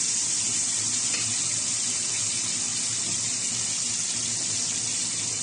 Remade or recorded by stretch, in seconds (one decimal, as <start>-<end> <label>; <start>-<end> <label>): 0.0-5.4 recorded